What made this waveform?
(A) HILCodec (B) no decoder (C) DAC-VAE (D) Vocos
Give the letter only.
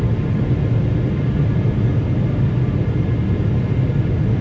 B